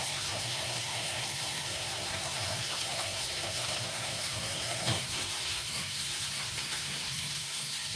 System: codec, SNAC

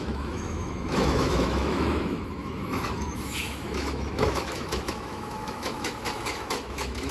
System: autoencoder, DAC-VAE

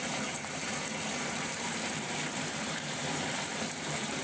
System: vocoder, BigVGAN v2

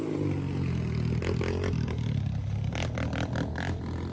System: none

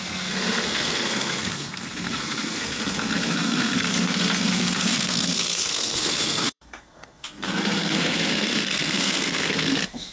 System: codec, SNAC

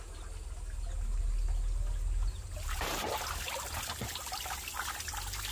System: none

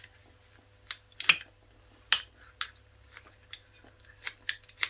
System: none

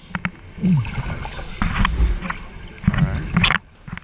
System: none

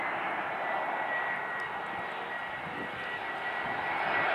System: none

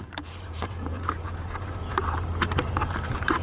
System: vocoder, BigVGAN v2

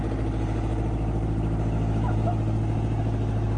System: none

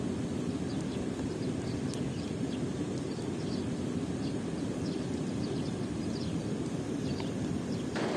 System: none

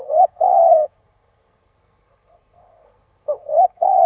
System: codec, SNAC